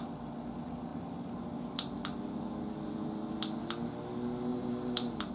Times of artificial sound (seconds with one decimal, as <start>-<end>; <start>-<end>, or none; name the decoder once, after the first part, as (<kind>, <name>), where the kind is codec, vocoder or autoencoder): 4.5-5.3 (vocoder, BigVGAN v2)